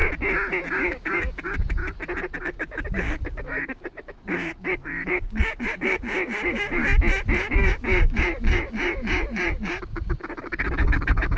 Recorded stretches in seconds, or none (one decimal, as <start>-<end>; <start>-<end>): 0.0-0.7; 1.8-2.4; 6.8-7.4